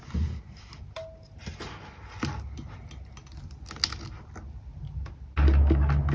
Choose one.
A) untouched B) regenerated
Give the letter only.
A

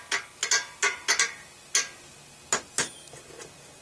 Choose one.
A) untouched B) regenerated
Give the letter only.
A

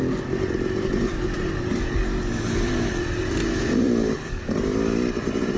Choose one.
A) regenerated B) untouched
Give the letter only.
B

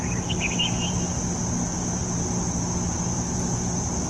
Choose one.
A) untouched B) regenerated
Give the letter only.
A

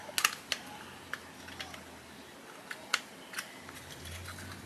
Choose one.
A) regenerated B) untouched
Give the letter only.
B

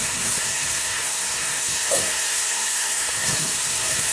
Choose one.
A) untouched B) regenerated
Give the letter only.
B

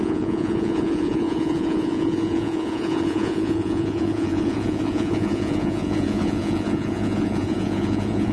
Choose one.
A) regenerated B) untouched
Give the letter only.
A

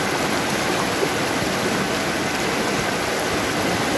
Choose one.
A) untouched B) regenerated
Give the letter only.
A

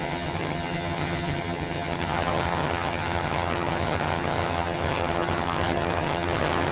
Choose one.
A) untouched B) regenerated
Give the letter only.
B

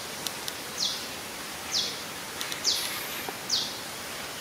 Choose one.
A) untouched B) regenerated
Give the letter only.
A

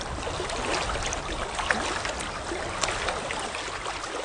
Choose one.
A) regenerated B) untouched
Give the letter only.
B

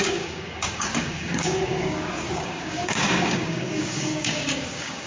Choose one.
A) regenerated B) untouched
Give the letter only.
A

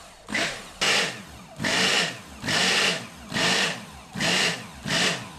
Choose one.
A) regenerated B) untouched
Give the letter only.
B